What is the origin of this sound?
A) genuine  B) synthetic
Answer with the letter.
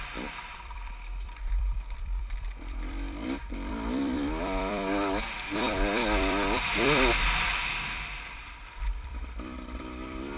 B